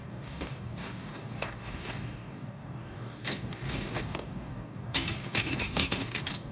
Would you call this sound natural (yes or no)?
no